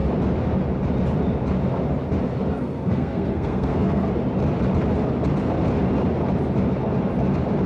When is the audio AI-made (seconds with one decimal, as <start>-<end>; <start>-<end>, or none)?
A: 2.5-4.1